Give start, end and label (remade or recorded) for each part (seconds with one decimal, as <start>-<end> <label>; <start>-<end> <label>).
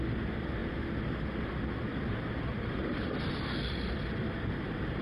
0.0-1.9 recorded; 1.9-5.0 remade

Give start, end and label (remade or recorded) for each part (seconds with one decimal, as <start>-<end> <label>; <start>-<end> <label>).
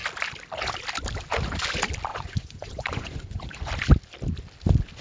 0.0-2.1 recorded; 2.1-3.7 remade; 3.7-5.0 recorded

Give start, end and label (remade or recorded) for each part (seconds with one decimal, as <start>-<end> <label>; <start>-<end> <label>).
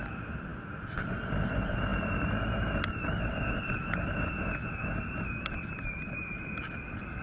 0.0-7.2 recorded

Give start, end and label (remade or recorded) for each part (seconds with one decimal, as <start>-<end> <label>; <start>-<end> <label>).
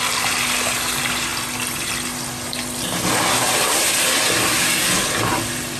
0.0-5.8 remade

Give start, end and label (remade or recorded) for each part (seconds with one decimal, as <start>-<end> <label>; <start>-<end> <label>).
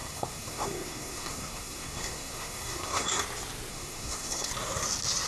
0.0-3.2 remade; 3.2-3.7 recorded; 3.7-4.5 remade; 4.5-5.3 recorded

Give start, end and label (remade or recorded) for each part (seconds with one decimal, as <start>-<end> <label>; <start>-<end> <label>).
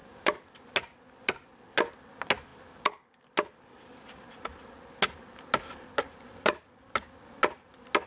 0.0-0.6 remade; 0.6-8.1 recorded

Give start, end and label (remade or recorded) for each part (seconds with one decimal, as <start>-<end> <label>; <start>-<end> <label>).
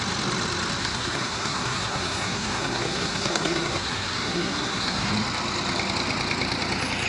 0.0-0.8 recorded; 0.8-5.1 remade; 5.1-7.1 recorded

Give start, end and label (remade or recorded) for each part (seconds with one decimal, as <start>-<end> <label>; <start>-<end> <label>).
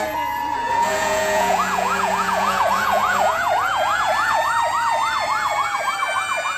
0.0-0.5 recorded; 0.5-4.5 remade; 4.5-6.6 recorded